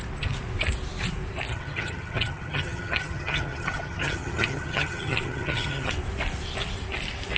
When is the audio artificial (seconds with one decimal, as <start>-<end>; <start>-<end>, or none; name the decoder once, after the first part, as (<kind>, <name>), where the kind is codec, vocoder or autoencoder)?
1.5-5.9 (vocoder, HiFi-GAN)